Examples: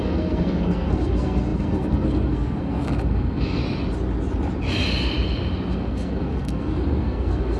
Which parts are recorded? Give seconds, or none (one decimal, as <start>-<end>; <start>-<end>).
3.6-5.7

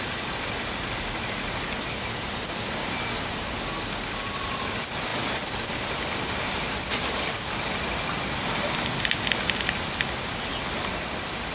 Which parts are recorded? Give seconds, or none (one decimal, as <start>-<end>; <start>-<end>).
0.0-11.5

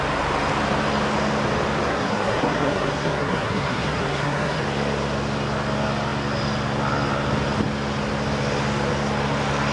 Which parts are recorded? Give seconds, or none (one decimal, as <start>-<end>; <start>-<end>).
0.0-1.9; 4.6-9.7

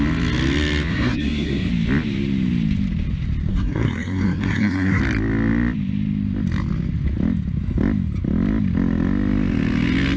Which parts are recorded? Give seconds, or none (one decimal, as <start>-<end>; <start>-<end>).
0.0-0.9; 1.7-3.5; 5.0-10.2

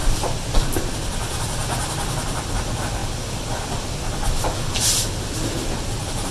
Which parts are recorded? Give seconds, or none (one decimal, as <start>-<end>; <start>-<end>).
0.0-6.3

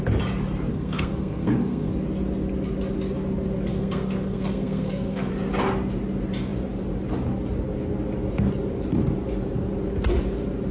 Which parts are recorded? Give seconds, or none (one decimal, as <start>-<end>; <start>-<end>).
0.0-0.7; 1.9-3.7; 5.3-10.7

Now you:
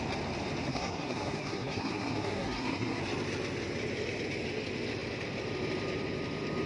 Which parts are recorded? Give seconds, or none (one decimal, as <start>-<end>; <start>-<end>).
0.0-0.7; 3.0-6.7

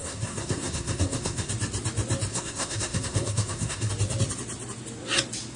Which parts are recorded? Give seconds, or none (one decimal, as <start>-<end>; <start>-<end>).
1.5-2.3; 3.9-5.6